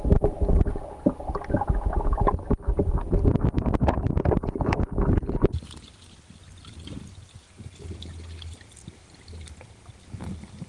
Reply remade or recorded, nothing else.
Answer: recorded